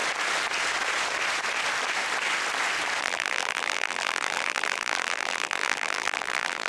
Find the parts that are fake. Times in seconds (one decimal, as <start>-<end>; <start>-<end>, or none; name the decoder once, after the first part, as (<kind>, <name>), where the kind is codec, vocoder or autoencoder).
3.0-6.7 (vocoder, BigVGAN v2)